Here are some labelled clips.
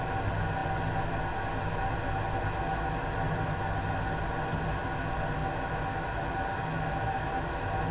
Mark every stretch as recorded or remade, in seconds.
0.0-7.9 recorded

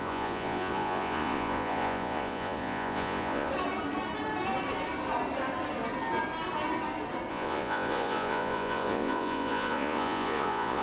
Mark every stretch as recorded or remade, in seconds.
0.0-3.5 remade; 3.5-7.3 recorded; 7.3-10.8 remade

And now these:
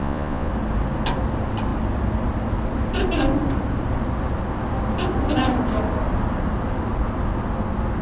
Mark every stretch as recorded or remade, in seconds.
0.0-0.5 remade; 0.5-8.0 recorded

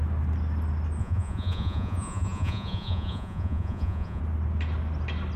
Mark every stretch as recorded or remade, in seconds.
0.0-1.0 recorded; 1.0-4.2 remade; 4.2-5.4 recorded

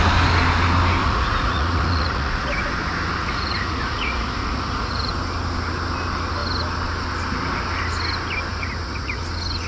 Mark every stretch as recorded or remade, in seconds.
0.0-1.0 recorded; 1.0-2.7 remade; 2.7-3.2 recorded; 3.2-5.1 remade; 5.1-8.5 recorded; 8.5-9.2 remade; 9.2-9.7 recorded

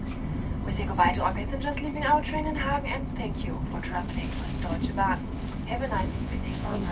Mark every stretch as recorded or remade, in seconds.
0.0-6.1 recorded; 6.1-6.9 remade